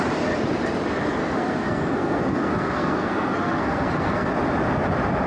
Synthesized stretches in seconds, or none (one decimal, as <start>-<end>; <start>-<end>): 1.2-4.3